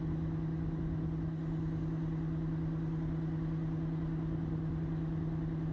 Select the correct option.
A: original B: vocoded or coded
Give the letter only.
A